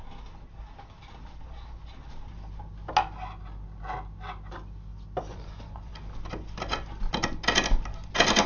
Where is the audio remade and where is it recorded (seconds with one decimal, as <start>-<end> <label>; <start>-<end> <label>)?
0.0-5.3 recorded; 5.3-5.9 remade; 5.9-8.5 recorded